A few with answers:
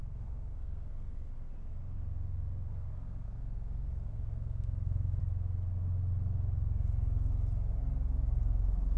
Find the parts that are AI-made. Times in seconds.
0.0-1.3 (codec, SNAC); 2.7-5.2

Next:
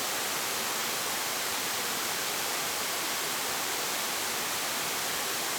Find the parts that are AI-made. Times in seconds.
0.8-4.2 (vocoder, BigVGAN v2)

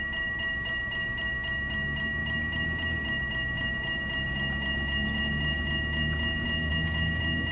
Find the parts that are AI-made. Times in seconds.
none